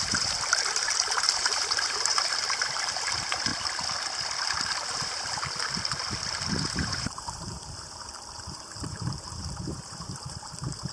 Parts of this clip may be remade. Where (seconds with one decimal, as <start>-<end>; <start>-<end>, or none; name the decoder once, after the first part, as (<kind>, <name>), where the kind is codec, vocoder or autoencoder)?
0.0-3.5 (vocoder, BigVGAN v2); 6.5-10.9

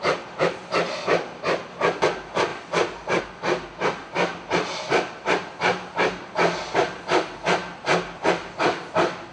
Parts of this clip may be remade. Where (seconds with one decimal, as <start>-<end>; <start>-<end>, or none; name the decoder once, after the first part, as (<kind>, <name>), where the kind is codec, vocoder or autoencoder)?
2.5-3.2 (vocoder, BigVGAN v2)

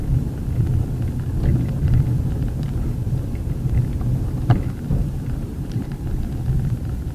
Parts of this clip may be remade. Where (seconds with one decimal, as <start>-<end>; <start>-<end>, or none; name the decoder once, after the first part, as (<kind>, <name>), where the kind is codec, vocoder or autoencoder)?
1.5-5.7 (vocoder, BigVGAN v2)

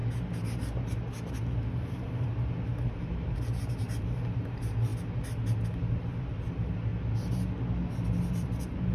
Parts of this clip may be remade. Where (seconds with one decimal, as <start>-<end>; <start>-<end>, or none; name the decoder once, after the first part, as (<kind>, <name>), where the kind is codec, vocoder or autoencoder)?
1.8-4.9 (vocoder, BigVGAN v2); 6.3-6.9; 8.3-8.9